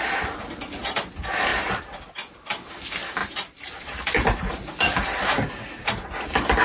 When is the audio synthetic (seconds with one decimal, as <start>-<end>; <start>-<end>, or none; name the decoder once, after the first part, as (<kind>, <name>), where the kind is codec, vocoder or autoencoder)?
1.5-2.7 (vocoder, BigVGAN v2); 3.2-4.5